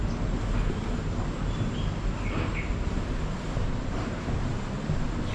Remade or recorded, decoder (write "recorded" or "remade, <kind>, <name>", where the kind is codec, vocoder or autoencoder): recorded